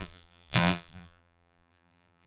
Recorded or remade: remade